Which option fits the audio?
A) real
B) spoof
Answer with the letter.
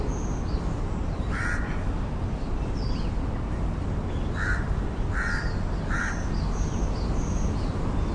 A